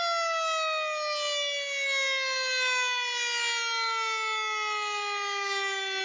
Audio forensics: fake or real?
real